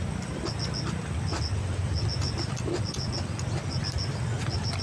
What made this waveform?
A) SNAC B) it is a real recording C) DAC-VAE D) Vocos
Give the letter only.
B